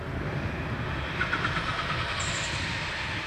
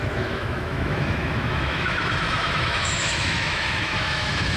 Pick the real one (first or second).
first